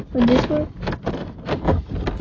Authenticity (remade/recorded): recorded